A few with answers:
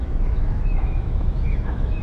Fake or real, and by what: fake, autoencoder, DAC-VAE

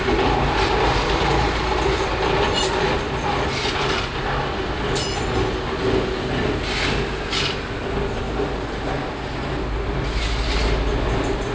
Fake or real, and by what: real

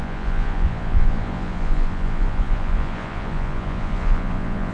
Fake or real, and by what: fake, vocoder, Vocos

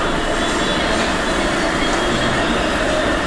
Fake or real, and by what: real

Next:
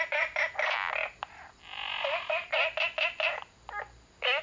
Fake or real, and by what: real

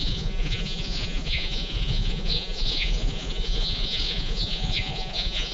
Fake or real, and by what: fake, vocoder, Vocos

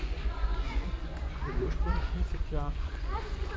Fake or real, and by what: fake, vocoder, Vocos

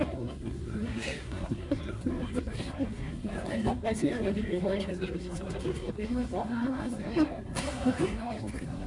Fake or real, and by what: fake, codec, SNAC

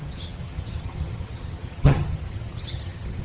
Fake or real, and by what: fake, vocoder, HiFi-GAN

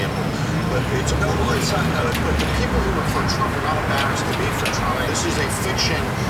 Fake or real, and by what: real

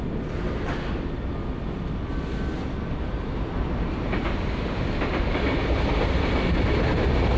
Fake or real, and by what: real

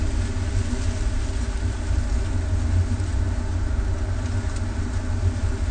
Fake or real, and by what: real